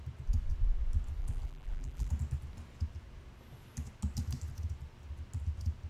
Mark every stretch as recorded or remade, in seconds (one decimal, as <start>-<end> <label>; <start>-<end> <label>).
0.0-1.2 recorded; 1.2-2.1 remade; 2.1-5.9 recorded